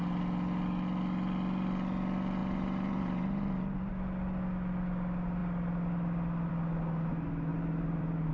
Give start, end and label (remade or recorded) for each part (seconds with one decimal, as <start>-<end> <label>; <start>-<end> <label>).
0.0-2.4 recorded; 2.4-3.9 remade; 3.9-7.5 recorded; 7.5-8.3 remade